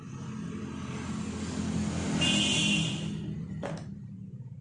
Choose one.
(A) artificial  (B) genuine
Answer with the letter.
B